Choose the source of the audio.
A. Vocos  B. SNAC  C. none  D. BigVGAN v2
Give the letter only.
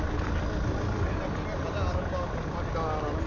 C